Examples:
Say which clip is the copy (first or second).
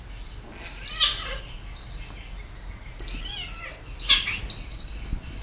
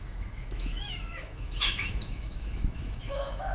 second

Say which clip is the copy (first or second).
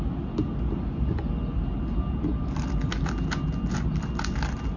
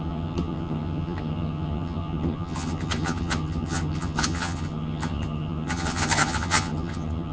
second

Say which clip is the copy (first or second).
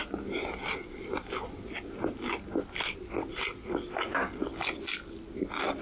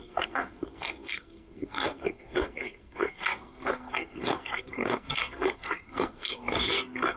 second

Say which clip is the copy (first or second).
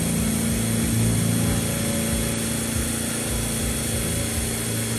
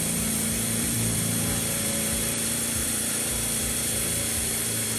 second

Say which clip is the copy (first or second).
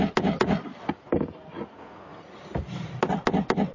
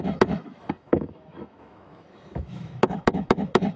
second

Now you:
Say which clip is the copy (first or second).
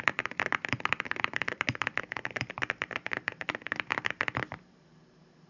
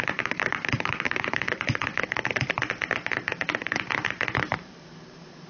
second